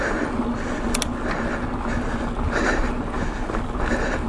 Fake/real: real